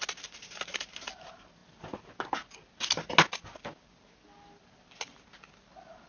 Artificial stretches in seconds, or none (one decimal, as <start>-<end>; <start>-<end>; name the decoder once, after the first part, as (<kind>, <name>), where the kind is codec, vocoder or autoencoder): none